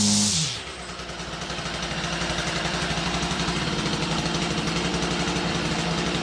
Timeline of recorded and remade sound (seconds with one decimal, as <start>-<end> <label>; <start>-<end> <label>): 0.0-0.7 recorded; 0.7-4.4 remade; 4.4-6.2 recorded